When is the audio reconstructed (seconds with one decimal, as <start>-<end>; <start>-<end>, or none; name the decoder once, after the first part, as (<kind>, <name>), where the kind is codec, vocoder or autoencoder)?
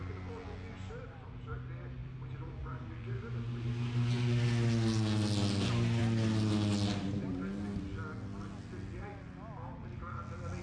none